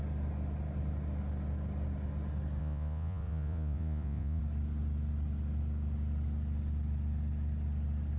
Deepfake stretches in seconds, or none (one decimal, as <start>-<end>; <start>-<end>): 2.6-4.4

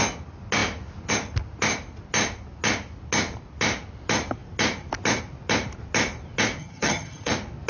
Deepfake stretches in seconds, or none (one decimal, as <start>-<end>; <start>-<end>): 6.6-7.3